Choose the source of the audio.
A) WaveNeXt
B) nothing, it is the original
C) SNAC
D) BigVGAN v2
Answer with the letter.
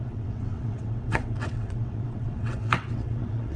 A